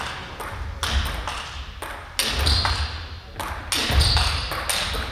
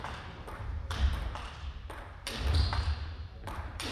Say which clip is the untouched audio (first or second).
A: first